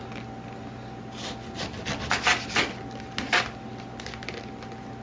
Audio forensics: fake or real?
real